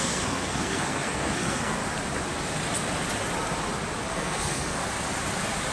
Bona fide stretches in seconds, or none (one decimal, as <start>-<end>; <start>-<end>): 1.8-4.1; 4.8-5.7